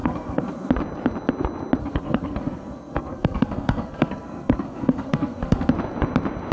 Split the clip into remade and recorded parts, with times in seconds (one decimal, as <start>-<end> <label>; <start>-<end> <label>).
0.0-0.7 remade; 0.7-1.8 recorded; 1.8-5.7 remade; 5.7-6.5 recorded